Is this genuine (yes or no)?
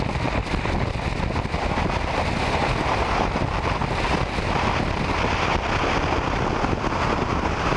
yes